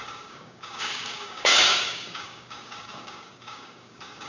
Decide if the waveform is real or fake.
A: fake